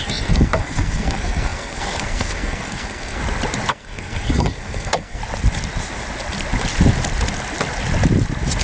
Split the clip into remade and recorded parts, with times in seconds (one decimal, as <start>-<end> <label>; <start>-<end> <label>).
0.0-3.2 remade; 3.2-3.7 recorded; 3.7-5.2 remade; 5.2-8.6 recorded